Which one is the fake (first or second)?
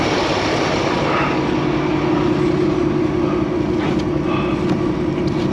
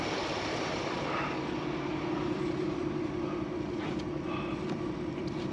second